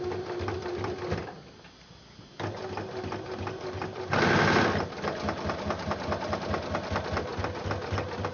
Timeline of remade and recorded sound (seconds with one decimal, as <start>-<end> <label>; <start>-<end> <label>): 0.0-8.3 recorded